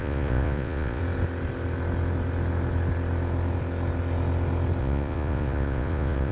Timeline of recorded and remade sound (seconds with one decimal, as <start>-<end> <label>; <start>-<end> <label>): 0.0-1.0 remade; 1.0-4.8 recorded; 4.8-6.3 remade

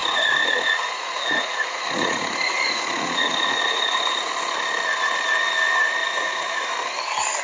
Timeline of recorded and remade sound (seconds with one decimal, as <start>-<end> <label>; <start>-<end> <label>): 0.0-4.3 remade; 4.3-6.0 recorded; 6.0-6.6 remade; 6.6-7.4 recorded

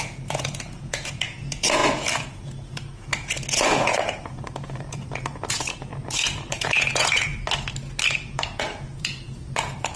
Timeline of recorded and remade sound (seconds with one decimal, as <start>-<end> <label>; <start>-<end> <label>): 0.0-7.3 remade; 7.3-8.1 recorded; 8.1-10.0 remade

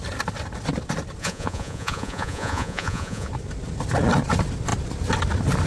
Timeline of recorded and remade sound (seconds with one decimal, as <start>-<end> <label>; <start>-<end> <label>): 0.0-1.2 recorded; 1.2-3.3 remade; 3.3-5.7 recorded

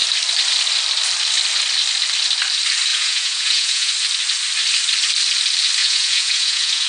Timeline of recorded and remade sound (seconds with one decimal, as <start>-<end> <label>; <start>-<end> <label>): 0.0-2.9 recorded; 2.9-3.9 remade; 3.9-5.8 recorded; 5.8-6.9 remade

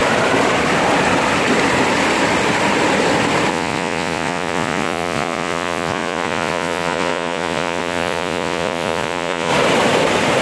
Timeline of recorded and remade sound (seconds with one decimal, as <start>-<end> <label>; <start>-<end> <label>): 0.0-3.5 recorded; 3.5-9.5 remade; 9.5-10.4 recorded